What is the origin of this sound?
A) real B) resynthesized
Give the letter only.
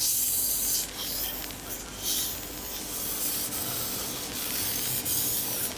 A